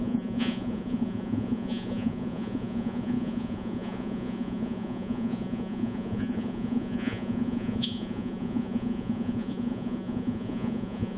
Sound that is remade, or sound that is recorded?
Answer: remade